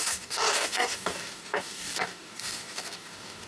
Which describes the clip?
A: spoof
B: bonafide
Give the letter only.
A